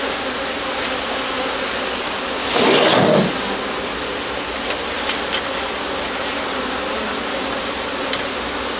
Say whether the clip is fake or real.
real